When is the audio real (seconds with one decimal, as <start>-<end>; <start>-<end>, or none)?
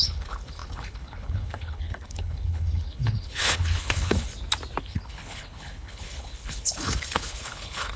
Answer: 4.3-4.8